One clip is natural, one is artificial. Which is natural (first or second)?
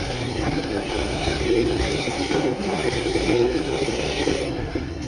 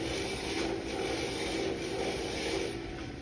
second